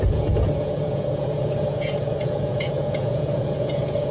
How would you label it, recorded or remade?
remade